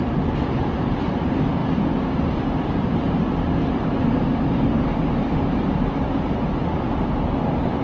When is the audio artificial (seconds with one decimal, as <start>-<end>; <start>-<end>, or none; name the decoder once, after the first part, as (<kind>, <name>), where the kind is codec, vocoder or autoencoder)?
none